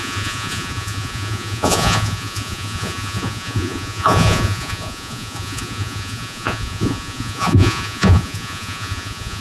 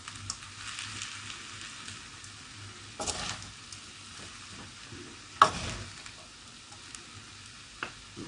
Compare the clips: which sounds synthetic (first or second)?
first